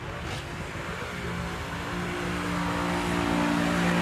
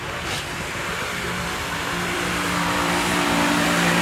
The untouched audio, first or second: first